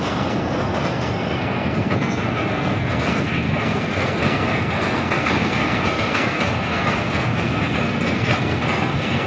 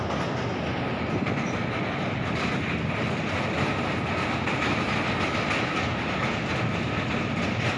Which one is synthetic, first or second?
first